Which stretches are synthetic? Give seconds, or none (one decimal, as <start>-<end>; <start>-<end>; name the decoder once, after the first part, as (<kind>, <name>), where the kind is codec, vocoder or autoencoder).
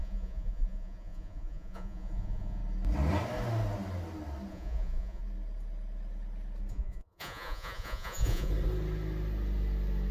0.0-2.6 (vocoder, Vocos); 4.5-5.2; 6.7-8.5